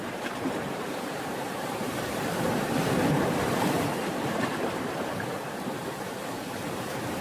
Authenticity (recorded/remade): remade